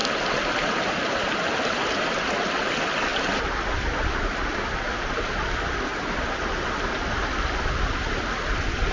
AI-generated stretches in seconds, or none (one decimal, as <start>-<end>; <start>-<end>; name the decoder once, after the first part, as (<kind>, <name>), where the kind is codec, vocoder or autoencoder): none